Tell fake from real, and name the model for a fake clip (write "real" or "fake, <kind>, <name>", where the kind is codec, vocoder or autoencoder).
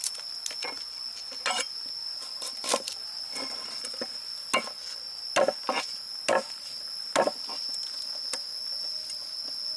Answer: real